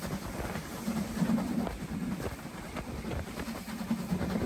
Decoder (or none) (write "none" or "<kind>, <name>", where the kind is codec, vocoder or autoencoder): none